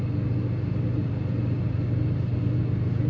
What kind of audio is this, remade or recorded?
recorded